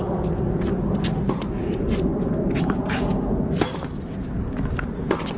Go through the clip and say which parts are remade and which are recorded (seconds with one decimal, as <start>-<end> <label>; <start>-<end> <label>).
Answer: 0.0-5.4 recorded